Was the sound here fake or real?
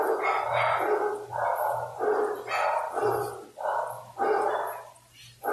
real